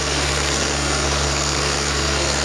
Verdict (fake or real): fake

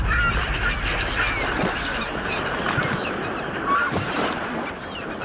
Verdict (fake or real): real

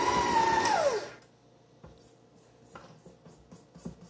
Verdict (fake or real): real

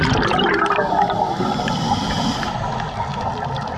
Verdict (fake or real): real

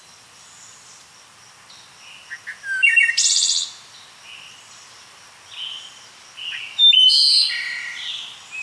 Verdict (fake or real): real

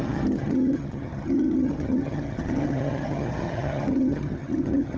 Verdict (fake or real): fake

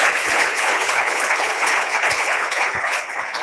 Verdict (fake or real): fake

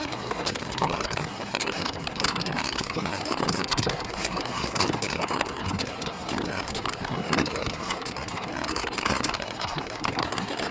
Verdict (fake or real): fake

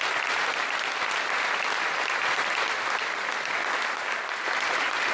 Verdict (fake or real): real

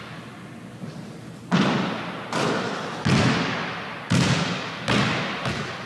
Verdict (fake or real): real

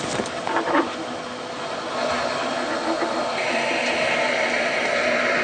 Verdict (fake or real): real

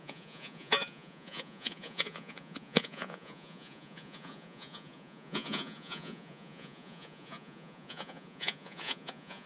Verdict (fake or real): fake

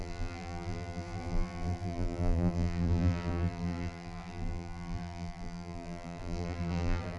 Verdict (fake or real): fake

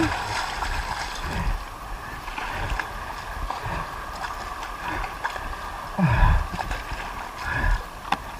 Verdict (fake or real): real